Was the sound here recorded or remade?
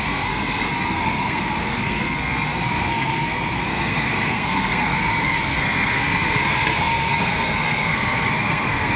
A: remade